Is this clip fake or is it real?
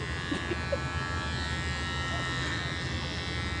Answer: real